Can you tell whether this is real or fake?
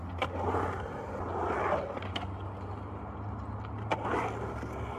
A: real